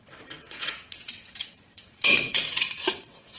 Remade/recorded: remade